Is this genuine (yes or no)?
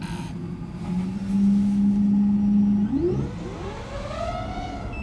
yes